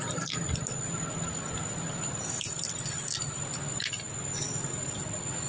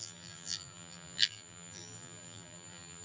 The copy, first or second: second